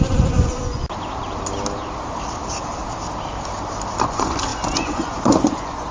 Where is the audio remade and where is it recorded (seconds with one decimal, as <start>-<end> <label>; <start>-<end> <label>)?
0.0-0.8 remade; 0.8-4.0 recorded; 4.0-5.9 remade